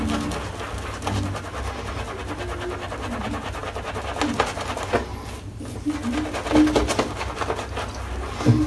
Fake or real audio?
real